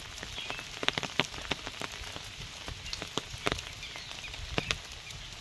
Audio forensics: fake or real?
real